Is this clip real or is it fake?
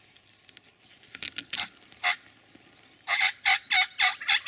real